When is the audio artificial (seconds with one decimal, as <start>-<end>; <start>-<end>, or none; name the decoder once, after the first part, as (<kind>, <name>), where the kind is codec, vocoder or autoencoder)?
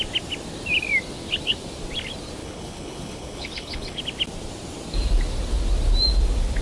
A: 2.4-4.0 (codec, HILCodec)